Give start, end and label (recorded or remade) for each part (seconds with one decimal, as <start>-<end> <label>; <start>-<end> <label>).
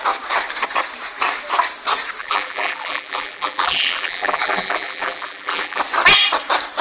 0.0-2.2 recorded; 2.2-5.8 remade; 5.8-6.8 recorded